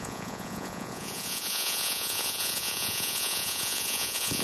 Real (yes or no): no